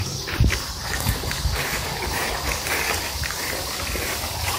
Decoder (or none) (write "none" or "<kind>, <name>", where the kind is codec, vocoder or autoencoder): codec, DAC